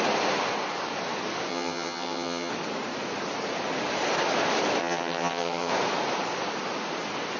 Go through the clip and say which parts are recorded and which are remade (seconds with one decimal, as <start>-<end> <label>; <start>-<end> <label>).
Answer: 0.0-1.5 recorded; 1.5-2.5 remade; 2.5-4.8 recorded; 4.8-5.7 remade; 5.7-7.4 recorded